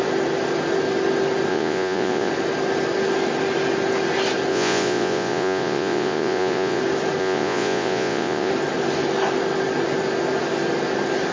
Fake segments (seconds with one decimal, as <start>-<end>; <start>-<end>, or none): 1.5-2.3; 4.5-6.8; 7.2-8.5